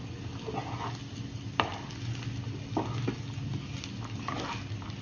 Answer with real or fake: real